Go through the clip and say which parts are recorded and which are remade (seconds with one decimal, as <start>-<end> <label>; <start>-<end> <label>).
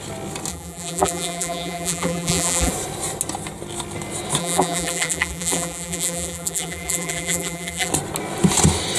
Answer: 0.0-0.5 recorded; 0.5-2.7 remade; 2.7-4.4 recorded; 4.4-7.9 remade; 7.9-9.0 recorded